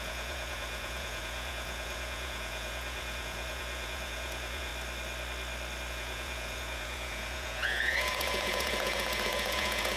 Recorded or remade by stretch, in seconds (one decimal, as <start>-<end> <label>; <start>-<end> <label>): 0.0-4.7 remade; 4.7-5.9 recorded; 5.9-10.0 remade